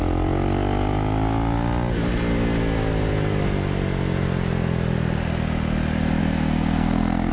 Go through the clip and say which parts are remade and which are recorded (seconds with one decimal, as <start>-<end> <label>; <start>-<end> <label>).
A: 0.0-6.2 recorded; 6.2-7.3 remade